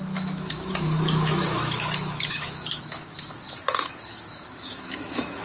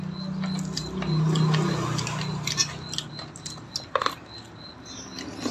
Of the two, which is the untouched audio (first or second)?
second